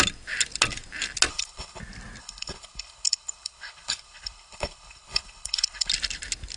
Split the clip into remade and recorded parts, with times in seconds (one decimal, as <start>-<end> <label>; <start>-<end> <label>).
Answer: 0.0-1.3 recorded; 1.3-1.8 remade; 1.8-2.2 recorded; 2.2-5.9 remade; 5.9-6.6 recorded

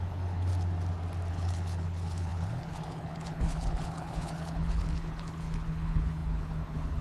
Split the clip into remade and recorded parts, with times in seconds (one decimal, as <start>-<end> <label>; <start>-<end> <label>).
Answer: 0.0-0.5 remade; 0.5-1.3 recorded; 1.3-7.0 remade

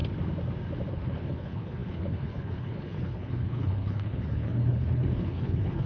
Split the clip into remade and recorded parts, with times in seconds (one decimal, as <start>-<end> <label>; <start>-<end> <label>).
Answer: 0.0-0.9 recorded; 0.9-5.9 remade

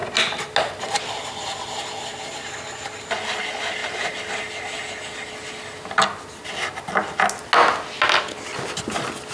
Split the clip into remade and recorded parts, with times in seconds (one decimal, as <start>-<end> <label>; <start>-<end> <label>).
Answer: 0.0-9.3 recorded